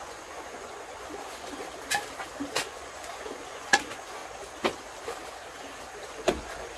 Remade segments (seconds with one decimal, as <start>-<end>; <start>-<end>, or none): 0.0-1.6; 2.6-4.2; 6.1-6.8